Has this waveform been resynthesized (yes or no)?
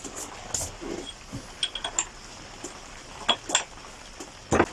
no